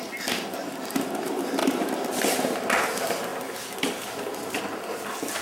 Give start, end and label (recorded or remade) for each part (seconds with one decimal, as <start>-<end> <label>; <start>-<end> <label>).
0.0-5.4 recorded